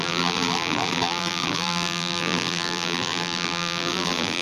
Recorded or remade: remade